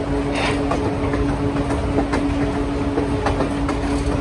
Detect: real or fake real